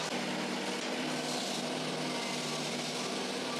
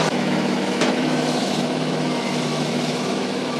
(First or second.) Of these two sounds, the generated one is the second